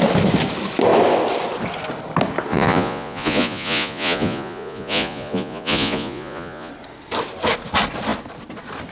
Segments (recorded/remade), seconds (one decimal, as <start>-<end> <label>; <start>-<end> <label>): 0.0-2.5 recorded; 2.5-6.7 remade; 6.7-8.9 recorded